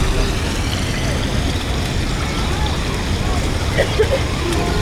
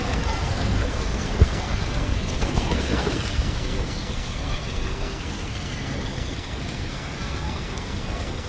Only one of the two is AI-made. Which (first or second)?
second